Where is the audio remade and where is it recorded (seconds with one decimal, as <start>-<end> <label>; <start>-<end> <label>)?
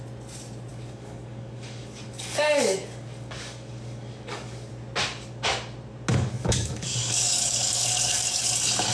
0.0-0.7 recorded; 0.7-4.7 remade; 4.7-6.1 recorded; 6.1-8.5 remade; 8.5-8.9 recorded